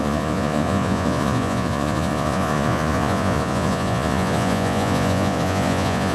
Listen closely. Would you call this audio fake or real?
fake